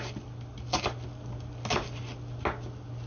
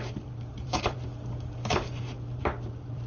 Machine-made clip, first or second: second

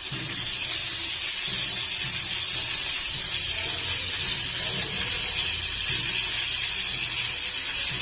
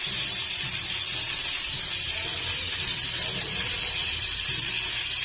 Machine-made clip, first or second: second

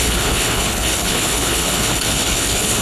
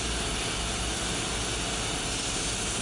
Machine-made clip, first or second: first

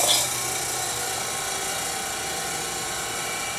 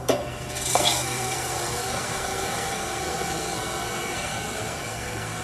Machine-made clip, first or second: second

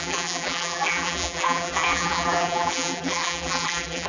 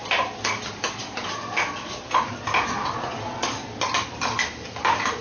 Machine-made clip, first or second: first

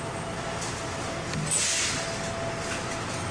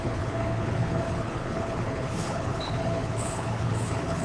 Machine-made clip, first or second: second